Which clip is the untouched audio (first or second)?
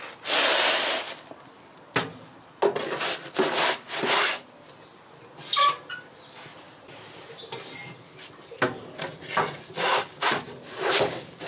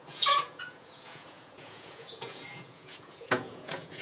first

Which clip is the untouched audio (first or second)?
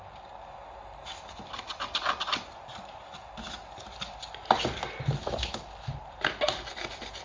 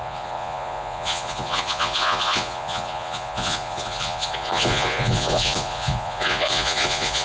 first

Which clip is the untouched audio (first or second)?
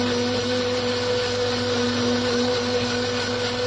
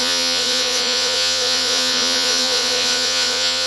first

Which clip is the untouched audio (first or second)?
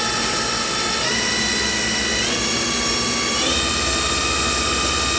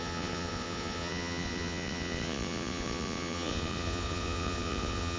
first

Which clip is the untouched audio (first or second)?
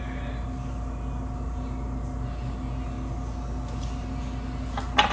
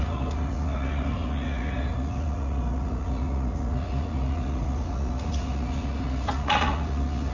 first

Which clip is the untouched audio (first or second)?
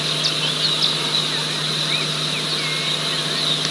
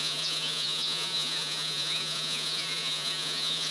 first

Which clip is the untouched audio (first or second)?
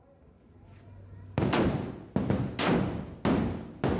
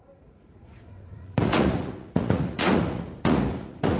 first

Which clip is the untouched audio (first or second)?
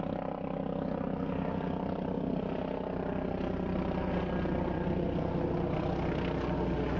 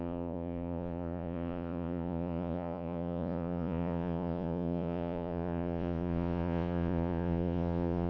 first